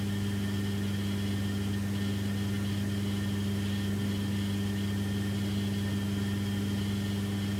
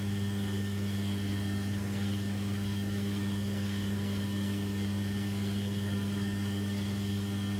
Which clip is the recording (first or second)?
first